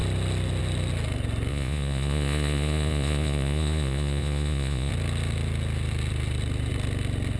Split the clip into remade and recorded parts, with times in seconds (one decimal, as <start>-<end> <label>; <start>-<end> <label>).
0.0-1.5 recorded; 1.5-4.9 remade; 4.9-7.4 recorded